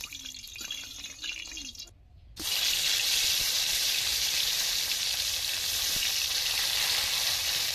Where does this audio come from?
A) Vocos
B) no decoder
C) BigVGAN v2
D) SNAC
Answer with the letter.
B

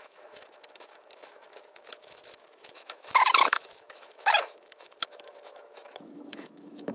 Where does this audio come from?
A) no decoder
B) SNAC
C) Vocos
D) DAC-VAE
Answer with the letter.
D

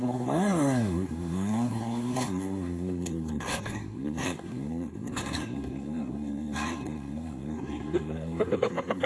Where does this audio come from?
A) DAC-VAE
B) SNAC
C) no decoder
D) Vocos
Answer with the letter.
B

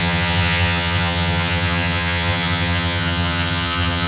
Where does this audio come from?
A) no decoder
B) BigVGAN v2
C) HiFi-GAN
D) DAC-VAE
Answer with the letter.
C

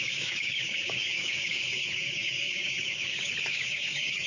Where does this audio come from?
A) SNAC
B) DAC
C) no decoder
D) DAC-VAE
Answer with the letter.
B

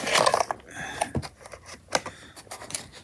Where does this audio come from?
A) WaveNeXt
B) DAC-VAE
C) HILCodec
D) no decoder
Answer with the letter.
D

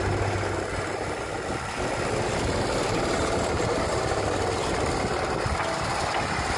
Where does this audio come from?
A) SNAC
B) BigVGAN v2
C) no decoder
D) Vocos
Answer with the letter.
C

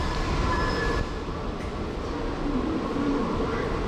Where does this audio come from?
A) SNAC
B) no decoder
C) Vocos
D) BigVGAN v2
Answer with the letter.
D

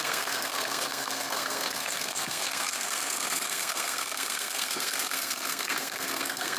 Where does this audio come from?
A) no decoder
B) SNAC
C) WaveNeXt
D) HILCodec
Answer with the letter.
B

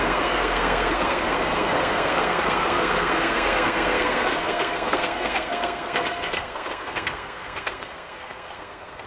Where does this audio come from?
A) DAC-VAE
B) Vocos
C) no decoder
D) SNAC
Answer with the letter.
D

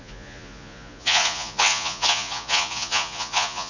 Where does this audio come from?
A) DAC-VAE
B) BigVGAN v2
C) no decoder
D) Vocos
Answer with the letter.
D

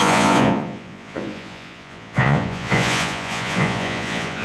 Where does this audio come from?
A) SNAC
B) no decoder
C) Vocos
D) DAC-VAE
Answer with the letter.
C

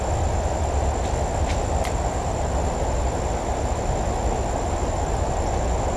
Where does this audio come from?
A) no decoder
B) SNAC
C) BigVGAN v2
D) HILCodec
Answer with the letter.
A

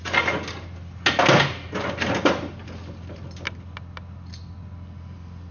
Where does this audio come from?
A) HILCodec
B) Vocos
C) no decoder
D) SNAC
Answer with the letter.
C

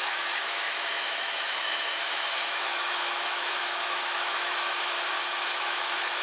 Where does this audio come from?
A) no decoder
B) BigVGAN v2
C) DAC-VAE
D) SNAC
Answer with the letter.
C